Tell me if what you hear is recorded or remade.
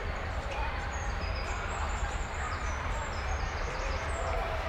remade